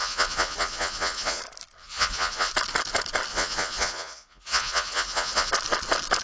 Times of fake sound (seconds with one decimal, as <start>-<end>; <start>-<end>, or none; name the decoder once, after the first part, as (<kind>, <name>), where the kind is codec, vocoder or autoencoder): 0.0-1.4 (vocoder, Vocos); 1.8-2.5; 3.3-5.5

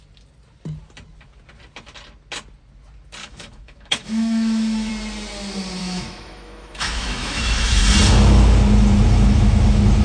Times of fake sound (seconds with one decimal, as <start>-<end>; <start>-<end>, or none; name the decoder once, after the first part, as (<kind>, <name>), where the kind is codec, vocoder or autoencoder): 3.2-4.9 (autoencoder, DAC-VAE); 5.8-7.8